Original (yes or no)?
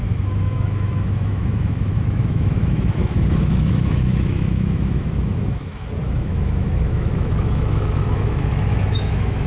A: no